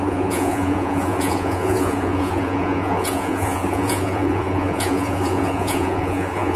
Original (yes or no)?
no